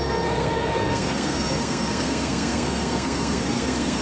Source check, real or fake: fake